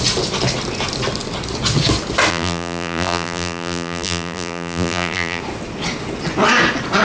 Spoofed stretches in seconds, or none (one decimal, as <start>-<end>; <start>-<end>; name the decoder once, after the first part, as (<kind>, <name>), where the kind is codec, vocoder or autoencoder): 2.3-5.4 (vocoder, BigVGAN v2)